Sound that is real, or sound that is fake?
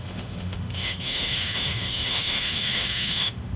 fake